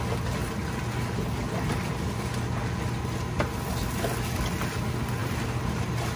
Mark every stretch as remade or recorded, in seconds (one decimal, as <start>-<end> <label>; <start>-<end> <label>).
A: 0.0-5.2 recorded; 5.2-5.8 remade; 5.8-6.2 recorded